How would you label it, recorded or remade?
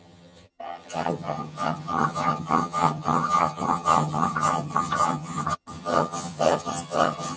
remade